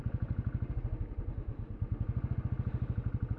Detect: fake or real real